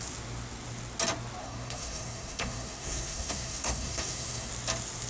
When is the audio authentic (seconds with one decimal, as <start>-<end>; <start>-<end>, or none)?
0.0-1.4; 4.5-5.1